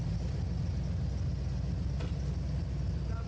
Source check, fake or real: real